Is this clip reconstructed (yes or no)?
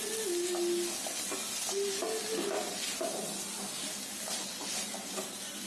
no